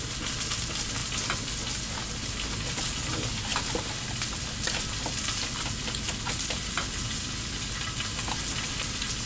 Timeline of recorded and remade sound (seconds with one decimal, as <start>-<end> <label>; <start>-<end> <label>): 0.0-9.3 recorded